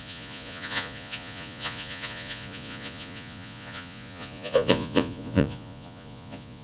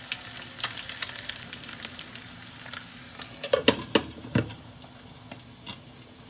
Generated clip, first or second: first